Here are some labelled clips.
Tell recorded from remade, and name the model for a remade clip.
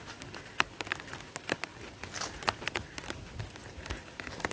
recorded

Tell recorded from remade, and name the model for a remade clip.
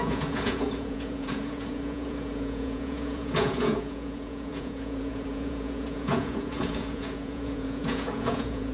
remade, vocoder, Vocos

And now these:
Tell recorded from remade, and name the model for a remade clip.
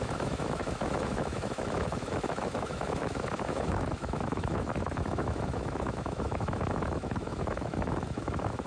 remade, autoencoder, DAC-VAE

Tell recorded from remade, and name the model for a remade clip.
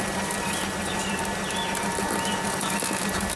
recorded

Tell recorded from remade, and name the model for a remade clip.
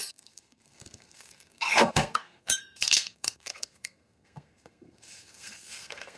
remade, codec, SNAC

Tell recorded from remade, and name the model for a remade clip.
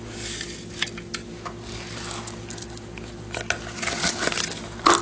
recorded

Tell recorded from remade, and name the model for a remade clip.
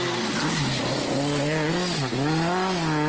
recorded